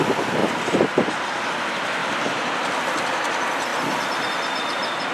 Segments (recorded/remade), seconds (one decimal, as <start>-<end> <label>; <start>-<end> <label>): 0.0-0.4 recorded; 0.4-1.1 remade; 1.1-2.0 recorded; 2.0-2.8 remade; 2.8-3.7 recorded; 3.7-4.3 remade; 4.3-5.1 recorded